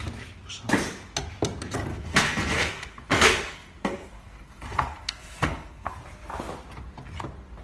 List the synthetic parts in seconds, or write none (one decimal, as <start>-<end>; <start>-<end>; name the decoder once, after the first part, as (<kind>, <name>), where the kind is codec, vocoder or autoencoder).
1.9-5.9 (codec, SNAC)